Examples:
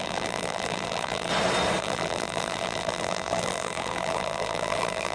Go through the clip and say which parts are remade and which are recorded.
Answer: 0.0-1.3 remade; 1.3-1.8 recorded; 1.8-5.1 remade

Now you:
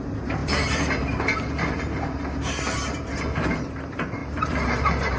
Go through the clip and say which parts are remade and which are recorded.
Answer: 0.0-5.2 remade

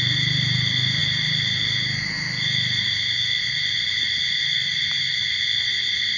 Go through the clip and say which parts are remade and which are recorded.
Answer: 0.0-6.2 recorded

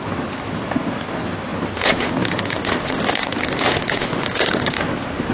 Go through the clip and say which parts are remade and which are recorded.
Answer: 0.0-1.5 recorded; 1.5-2.0 remade; 2.0-3.2 recorded; 3.2-3.8 remade; 3.8-5.3 recorded